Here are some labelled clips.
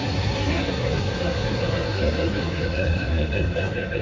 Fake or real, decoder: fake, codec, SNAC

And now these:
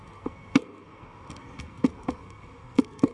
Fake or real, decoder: fake, codec, SNAC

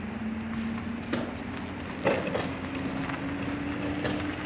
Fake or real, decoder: real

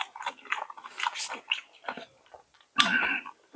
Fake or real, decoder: real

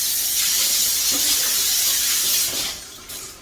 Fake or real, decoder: real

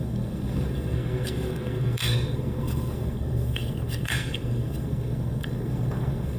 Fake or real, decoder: fake, codec, SNAC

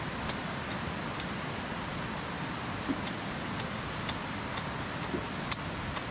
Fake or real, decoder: real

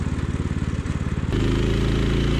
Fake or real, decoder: real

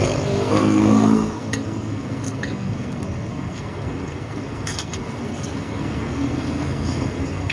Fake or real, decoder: fake, codec, SNAC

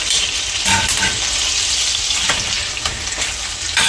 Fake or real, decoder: real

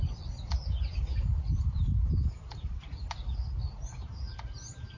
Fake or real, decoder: real